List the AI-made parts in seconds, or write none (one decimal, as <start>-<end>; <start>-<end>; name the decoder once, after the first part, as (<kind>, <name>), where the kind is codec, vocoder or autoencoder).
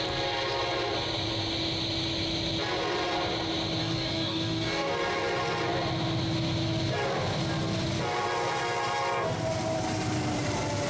3.8-4.9 (codec, DAC)